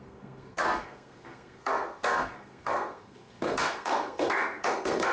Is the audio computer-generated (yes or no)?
yes